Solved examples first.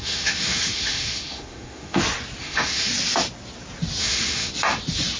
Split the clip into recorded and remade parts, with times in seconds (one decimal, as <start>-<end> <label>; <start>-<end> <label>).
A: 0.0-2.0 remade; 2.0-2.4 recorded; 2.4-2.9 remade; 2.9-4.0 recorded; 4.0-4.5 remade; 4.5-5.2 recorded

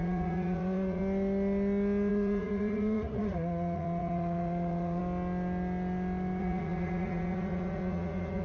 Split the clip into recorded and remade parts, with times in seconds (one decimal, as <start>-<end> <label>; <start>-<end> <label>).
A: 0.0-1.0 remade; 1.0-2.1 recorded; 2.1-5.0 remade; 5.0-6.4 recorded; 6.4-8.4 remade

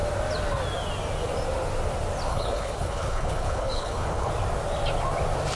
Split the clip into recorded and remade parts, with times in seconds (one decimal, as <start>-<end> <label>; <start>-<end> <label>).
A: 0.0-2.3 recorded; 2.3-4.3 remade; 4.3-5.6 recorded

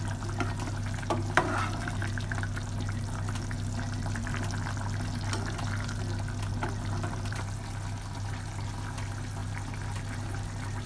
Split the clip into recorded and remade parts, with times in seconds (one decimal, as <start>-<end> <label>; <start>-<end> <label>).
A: 0.0-10.9 recorded

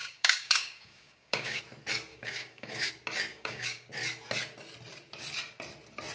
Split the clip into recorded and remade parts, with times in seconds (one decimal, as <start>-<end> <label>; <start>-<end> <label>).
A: 0.0-1.6 remade; 1.6-2.1 recorded; 2.1-2.9 remade; 2.9-3.3 recorded; 3.3-3.9 remade; 3.9-6.1 recorded